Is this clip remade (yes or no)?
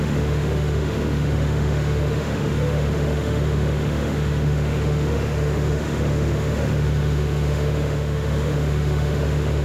yes